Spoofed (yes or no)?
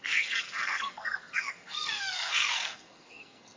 yes